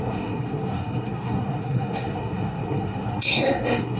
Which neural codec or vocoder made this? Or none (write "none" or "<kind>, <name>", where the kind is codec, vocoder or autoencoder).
codec, SNAC